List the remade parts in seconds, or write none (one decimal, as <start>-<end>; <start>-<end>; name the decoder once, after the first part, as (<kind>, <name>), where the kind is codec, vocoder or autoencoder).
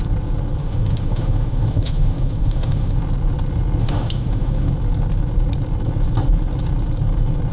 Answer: 0.6-3.0 (autoencoder, DAC-VAE); 3.8-4.7